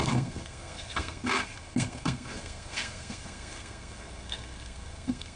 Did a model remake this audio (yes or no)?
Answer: yes